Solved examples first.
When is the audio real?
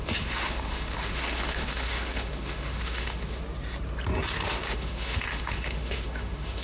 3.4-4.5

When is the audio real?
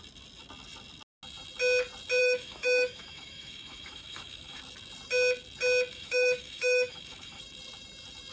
0.0-2.2; 4.6-5.9; 7.4-8.3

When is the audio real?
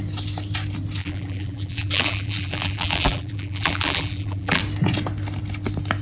0.0-1.0; 4.6-6.0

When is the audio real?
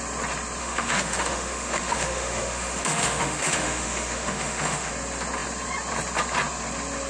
0.0-0.6; 4.9-7.1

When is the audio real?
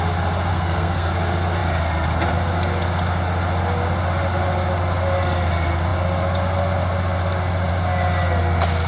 0.0-0.5; 1.1-8.9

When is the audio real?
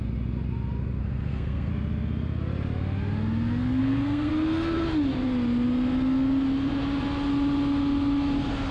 0.0-1.0; 1.7-3.8; 4.3-8.7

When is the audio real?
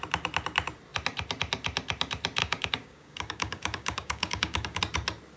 0.0-2.4; 4.8-5.4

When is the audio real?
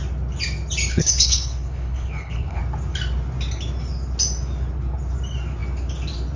0.0-0.9; 2.6-6.4